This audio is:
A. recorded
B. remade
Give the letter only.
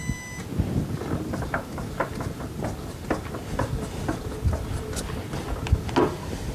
A